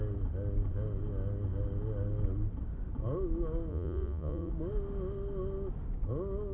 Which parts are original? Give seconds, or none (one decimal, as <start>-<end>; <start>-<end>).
0.0-3.7; 4.5-6.5